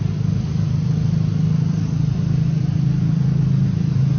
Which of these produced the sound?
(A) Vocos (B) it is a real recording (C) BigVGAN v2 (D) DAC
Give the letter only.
B